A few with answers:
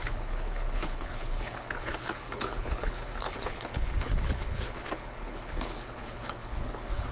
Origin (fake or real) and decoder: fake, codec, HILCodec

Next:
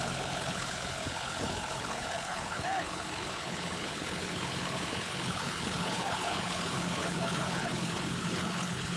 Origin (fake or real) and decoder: fake, codec, HILCodec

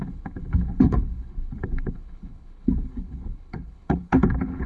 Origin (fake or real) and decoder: fake, codec, HILCodec